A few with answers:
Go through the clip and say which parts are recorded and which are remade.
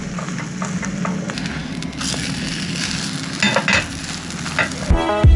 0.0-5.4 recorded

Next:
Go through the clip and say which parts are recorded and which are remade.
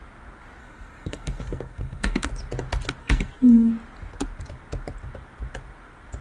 0.0-0.6 recorded; 0.6-2.3 remade; 2.3-3.0 recorded; 3.0-3.7 remade; 3.7-6.2 recorded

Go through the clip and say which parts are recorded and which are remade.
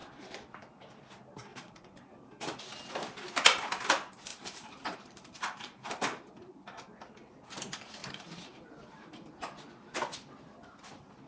0.0-1.5 recorded; 1.5-2.6 remade; 2.6-4.3 recorded; 4.3-6.3 remade; 6.3-8.0 recorded; 8.0-9.3 remade; 9.3-11.3 recorded